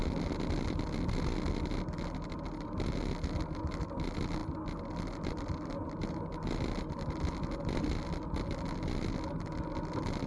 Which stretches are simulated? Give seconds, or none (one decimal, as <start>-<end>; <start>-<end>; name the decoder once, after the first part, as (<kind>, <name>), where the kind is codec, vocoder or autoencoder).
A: none